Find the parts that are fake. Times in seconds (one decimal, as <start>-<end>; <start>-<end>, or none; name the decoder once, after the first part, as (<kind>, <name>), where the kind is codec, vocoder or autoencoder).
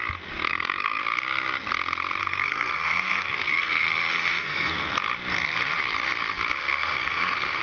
0.5-1.0 (codec, SNAC); 2.2-4.9; 6.6-7.6